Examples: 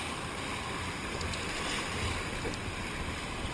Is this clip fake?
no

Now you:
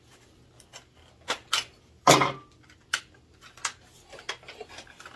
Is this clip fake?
no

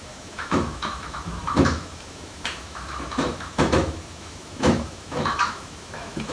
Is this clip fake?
yes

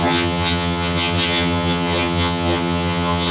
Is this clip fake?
yes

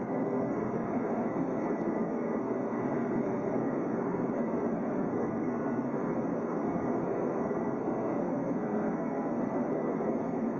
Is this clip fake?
yes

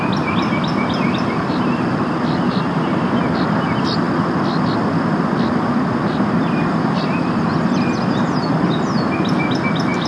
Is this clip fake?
no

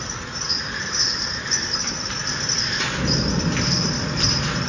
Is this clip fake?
no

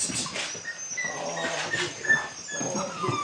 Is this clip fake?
no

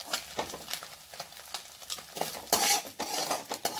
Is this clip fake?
no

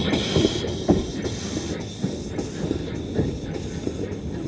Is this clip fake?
no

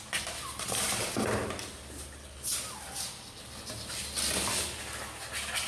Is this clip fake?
no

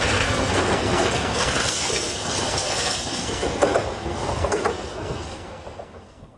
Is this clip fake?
yes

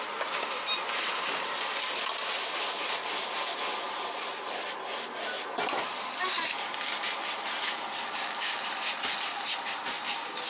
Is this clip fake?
no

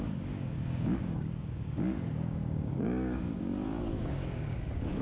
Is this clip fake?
yes